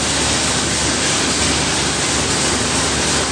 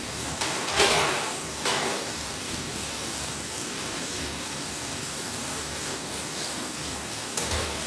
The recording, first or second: first